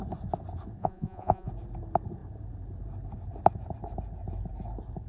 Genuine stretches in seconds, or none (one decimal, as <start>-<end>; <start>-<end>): 0.0-0.8; 1.5-5.1